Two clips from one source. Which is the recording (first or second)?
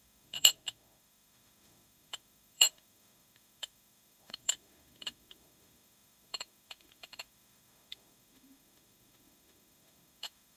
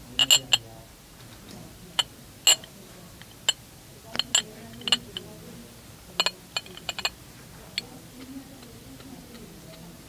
second